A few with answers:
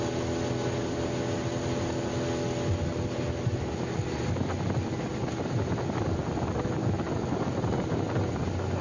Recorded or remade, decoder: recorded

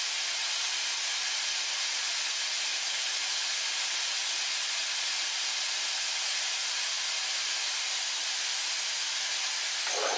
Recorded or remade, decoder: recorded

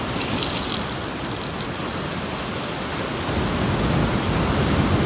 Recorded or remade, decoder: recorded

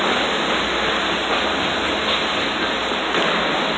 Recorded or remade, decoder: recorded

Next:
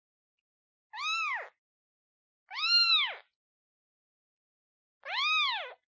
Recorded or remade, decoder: recorded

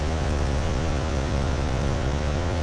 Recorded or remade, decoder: remade, vocoder, Vocos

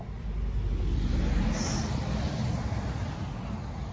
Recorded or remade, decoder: recorded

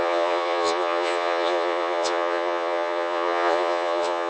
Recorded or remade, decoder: remade, vocoder, Vocos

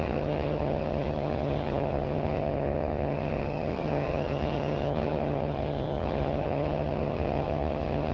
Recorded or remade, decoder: remade, vocoder, HiFi-GAN